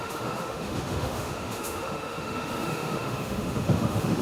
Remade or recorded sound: remade